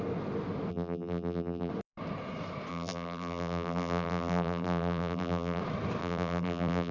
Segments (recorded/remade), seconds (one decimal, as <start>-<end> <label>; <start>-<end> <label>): 0.0-0.7 recorded; 0.7-1.7 remade; 1.7-2.7 recorded; 2.7-5.6 remade; 5.6-6.0 recorded; 6.0-6.9 remade